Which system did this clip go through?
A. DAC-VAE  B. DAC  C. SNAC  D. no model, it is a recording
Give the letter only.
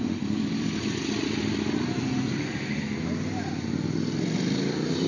D